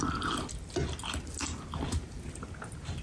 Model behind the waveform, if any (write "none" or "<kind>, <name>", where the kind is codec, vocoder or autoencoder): none